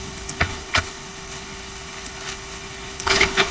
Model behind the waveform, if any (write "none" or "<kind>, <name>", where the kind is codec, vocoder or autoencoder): codec, HILCodec